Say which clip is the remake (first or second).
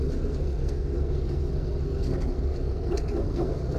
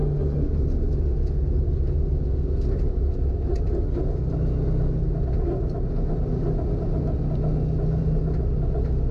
first